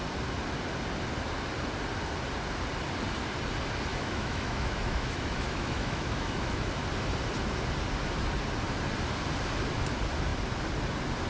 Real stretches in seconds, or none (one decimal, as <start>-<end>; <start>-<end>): 0.0-3.9; 6.7-11.3